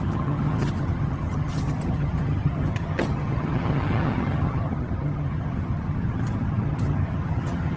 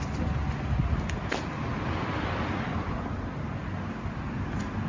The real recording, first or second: second